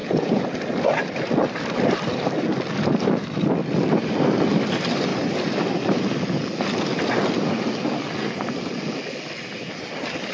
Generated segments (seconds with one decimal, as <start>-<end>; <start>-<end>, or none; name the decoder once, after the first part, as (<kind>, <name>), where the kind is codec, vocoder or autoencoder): 0.0-0.6 (vocoder, Vocos)